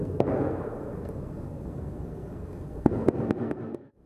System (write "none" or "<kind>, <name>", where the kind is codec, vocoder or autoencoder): codec, SNAC